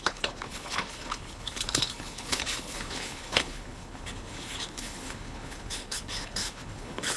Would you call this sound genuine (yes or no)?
no